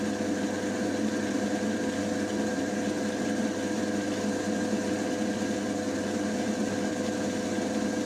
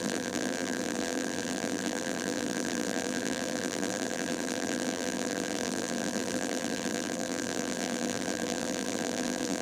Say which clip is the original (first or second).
first